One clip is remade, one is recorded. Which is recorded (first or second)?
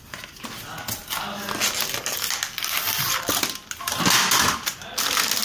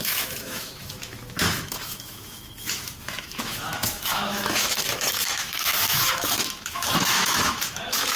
first